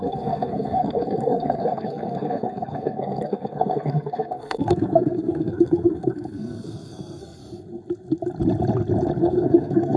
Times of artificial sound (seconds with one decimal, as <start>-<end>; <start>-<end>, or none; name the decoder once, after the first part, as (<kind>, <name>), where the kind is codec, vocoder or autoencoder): 0.0-7.4 (codec, SNAC); 9.2-10.0